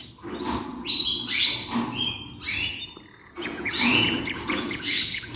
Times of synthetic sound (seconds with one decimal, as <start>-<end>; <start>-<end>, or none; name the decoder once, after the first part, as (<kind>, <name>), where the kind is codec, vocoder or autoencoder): 3.2-5.4 (vocoder, Vocos)